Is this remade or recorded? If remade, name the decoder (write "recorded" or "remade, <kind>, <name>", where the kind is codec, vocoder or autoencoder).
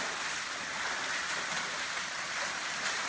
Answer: recorded